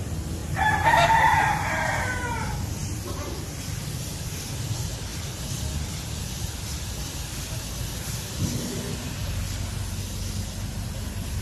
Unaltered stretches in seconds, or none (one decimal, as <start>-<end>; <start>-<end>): 0.0-0.4; 1.7-11.4